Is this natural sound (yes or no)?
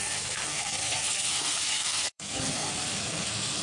no